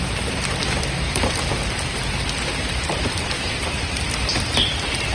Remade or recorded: recorded